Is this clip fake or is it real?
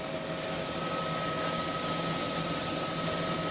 real